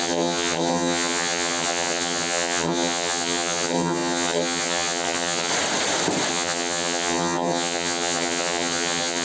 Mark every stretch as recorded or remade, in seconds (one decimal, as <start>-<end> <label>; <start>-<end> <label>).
0.0-5.5 remade; 5.5-6.3 recorded; 6.3-9.2 remade